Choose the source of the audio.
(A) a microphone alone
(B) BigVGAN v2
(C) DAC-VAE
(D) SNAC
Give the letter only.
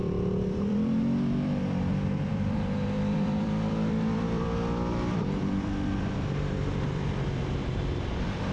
B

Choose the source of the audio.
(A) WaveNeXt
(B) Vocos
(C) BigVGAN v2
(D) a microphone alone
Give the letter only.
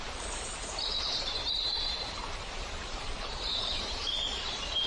C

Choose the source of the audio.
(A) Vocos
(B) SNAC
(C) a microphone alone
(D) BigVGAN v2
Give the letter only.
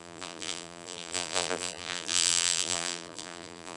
D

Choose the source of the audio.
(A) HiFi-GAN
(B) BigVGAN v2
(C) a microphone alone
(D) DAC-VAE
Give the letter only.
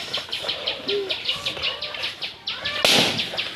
C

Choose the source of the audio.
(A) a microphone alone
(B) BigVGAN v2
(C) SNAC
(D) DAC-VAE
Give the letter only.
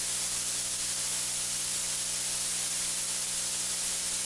A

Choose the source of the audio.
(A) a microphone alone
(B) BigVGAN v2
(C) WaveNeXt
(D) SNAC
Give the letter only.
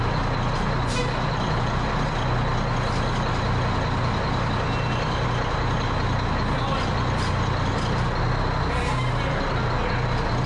A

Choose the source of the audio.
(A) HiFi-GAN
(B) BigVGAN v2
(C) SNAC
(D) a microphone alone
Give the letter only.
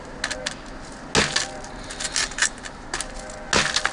D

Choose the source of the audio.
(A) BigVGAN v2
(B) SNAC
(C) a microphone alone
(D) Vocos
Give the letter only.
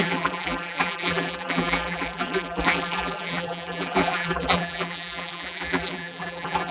A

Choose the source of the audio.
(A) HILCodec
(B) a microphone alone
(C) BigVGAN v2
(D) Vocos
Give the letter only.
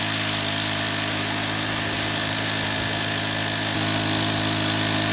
B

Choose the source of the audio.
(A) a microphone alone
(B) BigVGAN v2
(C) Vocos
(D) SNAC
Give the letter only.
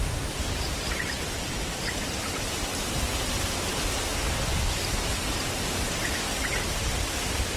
A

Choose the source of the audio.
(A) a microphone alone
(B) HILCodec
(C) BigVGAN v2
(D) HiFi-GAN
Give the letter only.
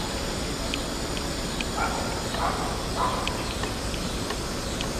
C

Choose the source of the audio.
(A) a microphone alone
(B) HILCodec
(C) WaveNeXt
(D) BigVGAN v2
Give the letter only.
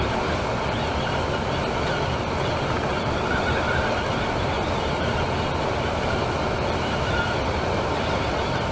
A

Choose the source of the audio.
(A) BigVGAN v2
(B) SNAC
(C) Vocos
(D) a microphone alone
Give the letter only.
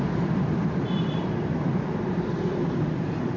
A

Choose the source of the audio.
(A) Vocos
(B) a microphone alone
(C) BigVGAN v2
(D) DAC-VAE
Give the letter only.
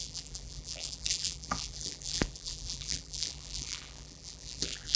C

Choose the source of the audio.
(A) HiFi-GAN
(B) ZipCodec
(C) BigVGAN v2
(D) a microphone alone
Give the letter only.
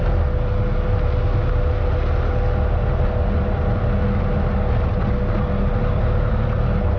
D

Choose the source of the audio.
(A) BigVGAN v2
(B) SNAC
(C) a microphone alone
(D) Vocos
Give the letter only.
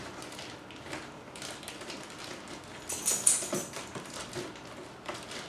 C